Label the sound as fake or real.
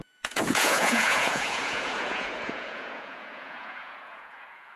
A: fake